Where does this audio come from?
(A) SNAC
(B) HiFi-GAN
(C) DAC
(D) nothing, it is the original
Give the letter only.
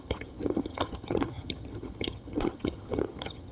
B